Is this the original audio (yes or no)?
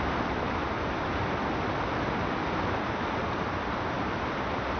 yes